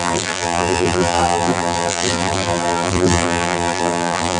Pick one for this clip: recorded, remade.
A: remade